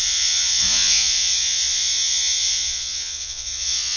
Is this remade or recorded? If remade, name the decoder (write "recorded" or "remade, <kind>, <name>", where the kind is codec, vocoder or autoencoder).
remade, vocoder, Vocos